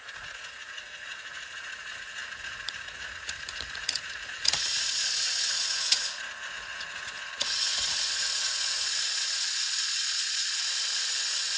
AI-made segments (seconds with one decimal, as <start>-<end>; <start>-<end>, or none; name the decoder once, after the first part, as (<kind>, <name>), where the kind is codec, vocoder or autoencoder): 0.0-11.6 (vocoder, Vocos)